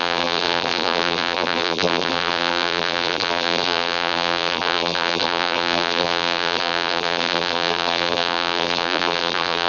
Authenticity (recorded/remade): remade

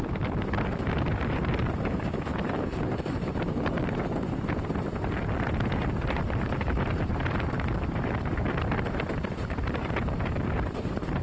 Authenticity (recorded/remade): remade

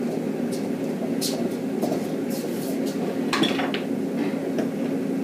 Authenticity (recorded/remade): recorded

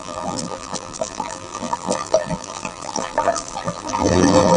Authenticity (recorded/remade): remade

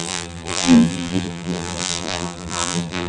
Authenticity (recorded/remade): remade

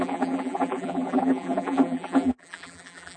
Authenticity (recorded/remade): remade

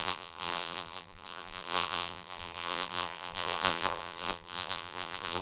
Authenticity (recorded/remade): remade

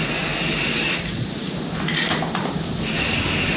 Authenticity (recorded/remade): recorded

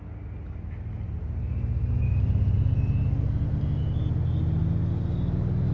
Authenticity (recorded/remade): recorded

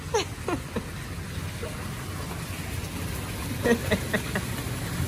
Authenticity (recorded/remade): recorded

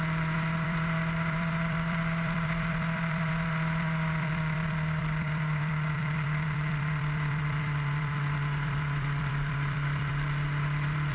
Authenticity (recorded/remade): remade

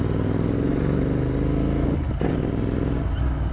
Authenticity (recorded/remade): recorded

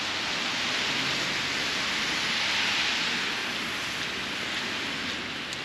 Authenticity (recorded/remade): recorded